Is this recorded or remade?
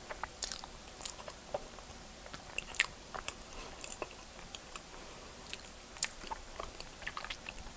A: remade